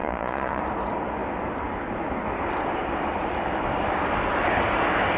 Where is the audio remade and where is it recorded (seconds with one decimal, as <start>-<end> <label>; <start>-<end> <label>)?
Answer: 0.0-0.6 remade; 0.6-5.2 recorded